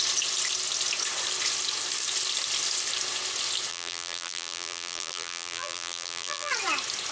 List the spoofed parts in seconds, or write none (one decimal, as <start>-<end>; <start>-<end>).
3.7-6.5